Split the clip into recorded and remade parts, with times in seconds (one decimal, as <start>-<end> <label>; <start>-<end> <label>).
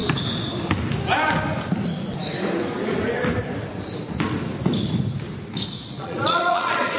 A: 0.0-5.9 recorded; 5.9-7.0 remade